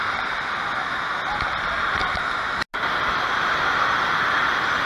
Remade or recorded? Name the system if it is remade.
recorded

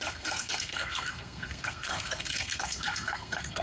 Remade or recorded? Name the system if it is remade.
remade, codec, SNAC